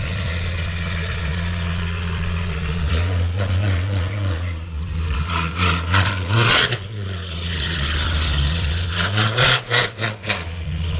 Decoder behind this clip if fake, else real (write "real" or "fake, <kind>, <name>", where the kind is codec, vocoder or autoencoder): fake, vocoder, Vocos